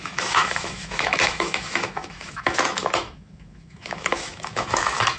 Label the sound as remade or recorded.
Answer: remade